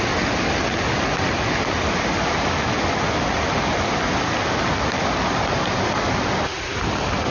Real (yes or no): yes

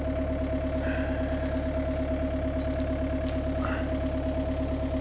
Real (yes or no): yes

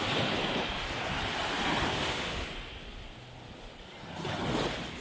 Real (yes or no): yes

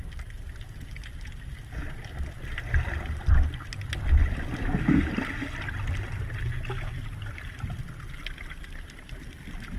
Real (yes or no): yes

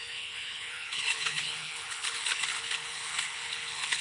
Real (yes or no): no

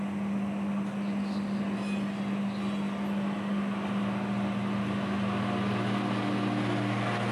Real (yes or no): yes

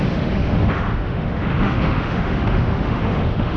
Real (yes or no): no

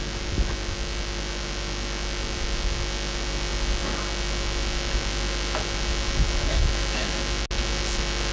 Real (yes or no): yes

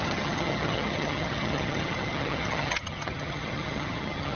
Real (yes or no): no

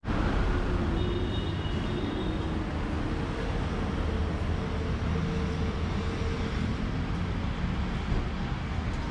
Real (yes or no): yes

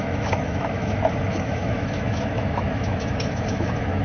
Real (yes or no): no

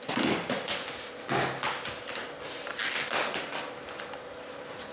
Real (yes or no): yes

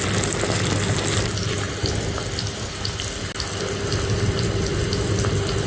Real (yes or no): yes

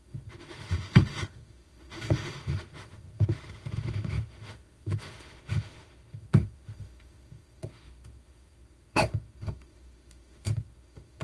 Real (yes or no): no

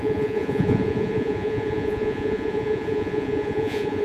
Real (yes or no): no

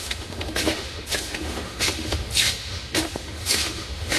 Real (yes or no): no